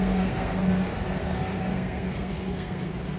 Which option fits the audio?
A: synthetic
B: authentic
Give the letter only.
A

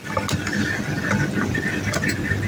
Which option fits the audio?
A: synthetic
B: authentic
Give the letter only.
B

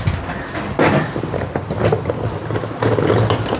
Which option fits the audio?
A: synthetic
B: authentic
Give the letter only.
B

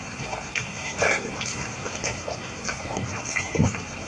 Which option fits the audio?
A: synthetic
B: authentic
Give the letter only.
A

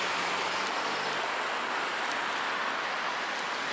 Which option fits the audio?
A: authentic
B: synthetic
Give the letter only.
A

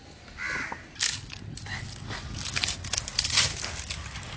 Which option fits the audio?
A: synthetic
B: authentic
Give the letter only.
B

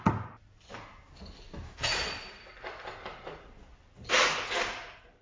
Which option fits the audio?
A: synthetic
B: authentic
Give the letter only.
B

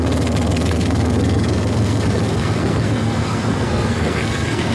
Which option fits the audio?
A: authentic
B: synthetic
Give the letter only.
B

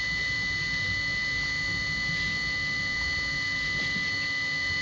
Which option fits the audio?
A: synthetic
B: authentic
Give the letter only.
B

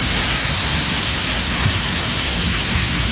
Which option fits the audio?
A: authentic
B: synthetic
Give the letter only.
B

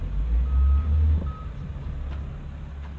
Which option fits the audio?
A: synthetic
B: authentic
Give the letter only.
B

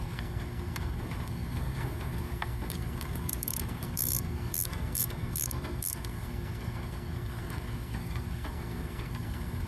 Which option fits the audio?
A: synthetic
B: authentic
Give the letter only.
A